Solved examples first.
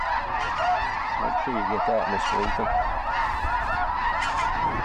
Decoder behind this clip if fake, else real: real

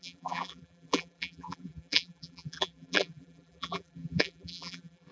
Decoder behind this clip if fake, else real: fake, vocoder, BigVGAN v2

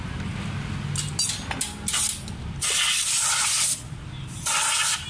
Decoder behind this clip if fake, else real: real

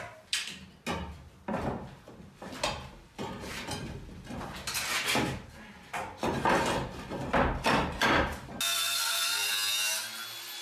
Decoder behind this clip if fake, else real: real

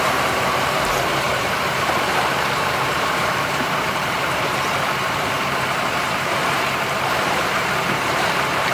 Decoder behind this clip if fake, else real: fake, vocoder, BigVGAN v2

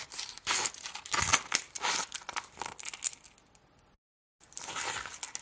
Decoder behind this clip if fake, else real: real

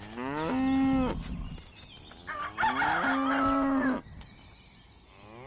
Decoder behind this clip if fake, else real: real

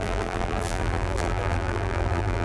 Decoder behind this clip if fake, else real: fake, vocoder, BigVGAN v2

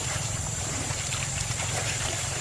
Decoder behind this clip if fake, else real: fake, vocoder, BigVGAN v2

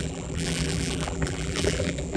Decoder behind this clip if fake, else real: fake, vocoder, BigVGAN v2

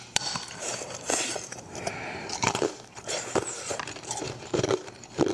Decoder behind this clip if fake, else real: fake, vocoder, BigVGAN v2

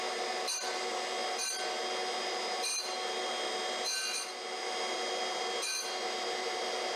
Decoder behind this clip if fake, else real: real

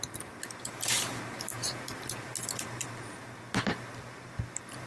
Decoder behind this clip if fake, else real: real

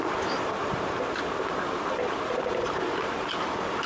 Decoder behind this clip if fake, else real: fake, vocoder, BigVGAN v2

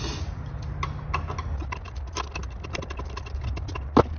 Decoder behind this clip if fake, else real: real